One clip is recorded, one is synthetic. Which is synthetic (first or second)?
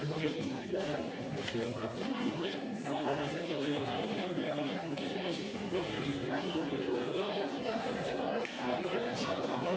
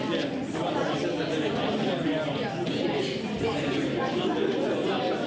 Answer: first